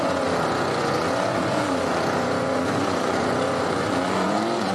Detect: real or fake fake